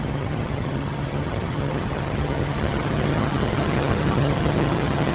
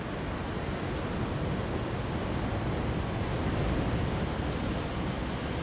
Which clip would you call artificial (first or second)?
first